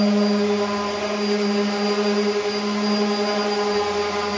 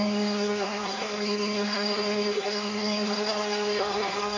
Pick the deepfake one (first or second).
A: second